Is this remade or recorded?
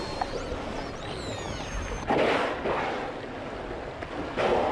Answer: recorded